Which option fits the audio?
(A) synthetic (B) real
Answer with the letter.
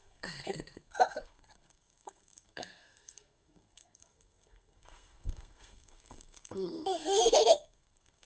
A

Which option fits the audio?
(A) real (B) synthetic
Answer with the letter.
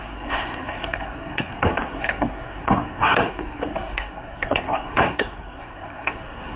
B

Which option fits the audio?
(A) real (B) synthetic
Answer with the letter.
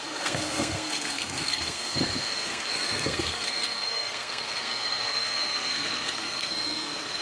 B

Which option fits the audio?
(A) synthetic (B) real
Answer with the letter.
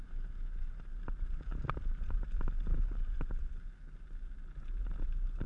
B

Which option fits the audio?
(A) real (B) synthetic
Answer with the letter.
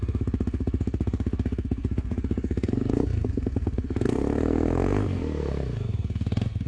B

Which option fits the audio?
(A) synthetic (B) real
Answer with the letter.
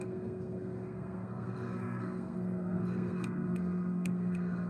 A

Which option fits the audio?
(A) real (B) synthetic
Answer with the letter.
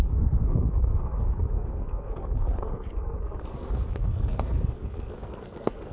B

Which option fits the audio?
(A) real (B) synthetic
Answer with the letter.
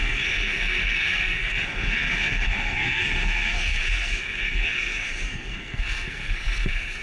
B